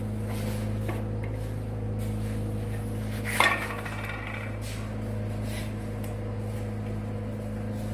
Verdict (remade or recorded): recorded